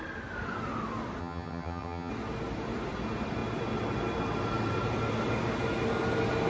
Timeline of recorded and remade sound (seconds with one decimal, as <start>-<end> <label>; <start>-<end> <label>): 0.0-1.2 recorded; 1.2-2.1 remade; 2.1-6.5 recorded